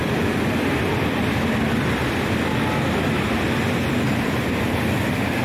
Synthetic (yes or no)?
no